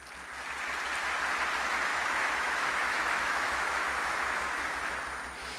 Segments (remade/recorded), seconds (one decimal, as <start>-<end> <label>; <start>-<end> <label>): 0.0-1.9 recorded; 1.9-4.8 remade; 4.8-5.6 recorded